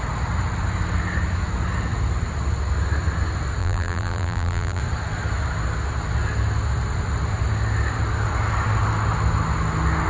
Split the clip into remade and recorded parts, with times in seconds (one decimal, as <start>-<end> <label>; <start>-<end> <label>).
0.0-3.6 recorded; 3.6-4.8 remade; 4.8-10.1 recorded